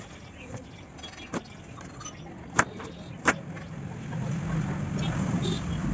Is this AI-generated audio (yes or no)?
no